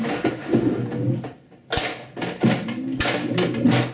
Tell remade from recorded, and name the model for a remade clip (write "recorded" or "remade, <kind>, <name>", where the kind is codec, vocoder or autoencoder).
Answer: recorded